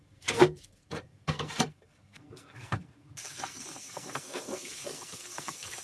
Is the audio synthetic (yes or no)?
yes